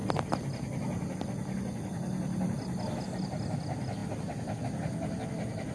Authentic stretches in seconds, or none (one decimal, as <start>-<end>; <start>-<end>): 0.0-5.7